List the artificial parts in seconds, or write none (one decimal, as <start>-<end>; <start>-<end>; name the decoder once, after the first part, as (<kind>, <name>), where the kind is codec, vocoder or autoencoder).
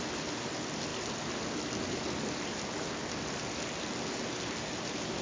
none